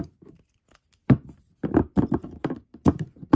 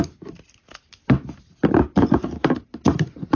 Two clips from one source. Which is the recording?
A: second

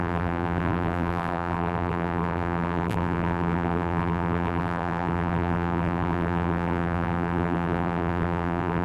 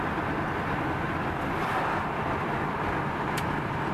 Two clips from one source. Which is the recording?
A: second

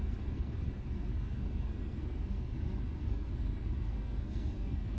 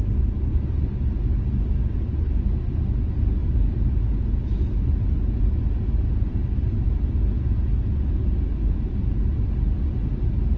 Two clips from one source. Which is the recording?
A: second